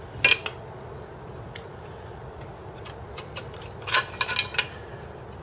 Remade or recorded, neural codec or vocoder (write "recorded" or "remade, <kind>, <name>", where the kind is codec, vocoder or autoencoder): recorded